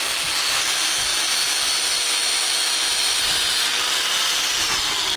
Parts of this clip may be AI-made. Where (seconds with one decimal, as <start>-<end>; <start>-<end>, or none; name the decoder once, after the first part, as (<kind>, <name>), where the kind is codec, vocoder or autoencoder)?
none